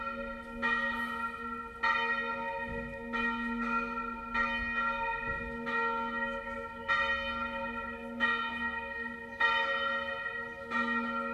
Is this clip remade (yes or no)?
no